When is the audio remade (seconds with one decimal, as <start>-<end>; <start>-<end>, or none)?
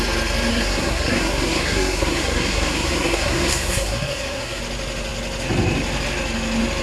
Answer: 0.5-4.6